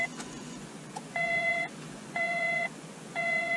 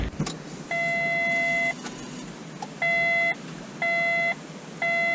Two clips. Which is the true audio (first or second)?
second